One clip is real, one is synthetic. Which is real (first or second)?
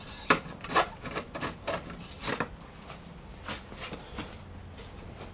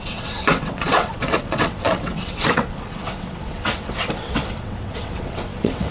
first